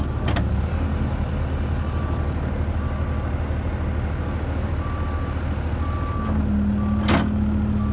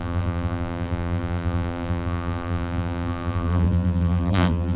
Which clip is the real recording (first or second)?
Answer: first